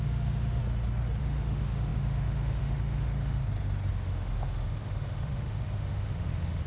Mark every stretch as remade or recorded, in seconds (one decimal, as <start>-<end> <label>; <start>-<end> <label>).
0.0-0.6 remade; 0.6-1.2 recorded; 1.2-3.4 remade; 3.4-3.9 recorded; 3.9-6.7 remade